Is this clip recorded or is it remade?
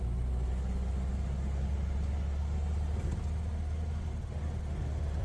recorded